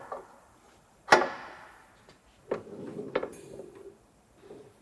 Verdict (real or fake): real